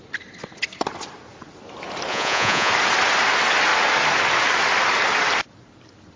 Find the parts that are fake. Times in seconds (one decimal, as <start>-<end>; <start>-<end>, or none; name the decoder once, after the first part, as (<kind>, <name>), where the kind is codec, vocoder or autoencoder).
2.1-2.7 (vocoder, Vocos)